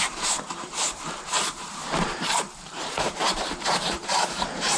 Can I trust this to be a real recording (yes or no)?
no